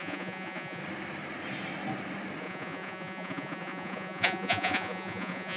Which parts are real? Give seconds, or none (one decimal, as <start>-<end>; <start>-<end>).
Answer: 0.8-2.4